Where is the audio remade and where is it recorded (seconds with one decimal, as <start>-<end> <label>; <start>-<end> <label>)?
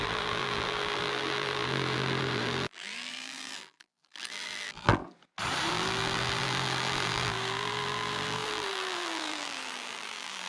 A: 0.0-5.0 remade; 5.0-5.7 recorded; 5.7-10.5 remade